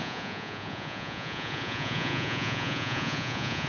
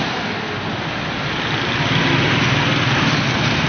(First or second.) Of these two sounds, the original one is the second